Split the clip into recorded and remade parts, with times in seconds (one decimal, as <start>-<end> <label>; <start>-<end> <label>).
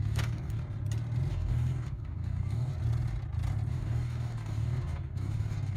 0.0-0.6 remade; 0.6-1.3 recorded; 1.3-2.7 remade; 2.7-3.7 recorded; 3.7-5.8 remade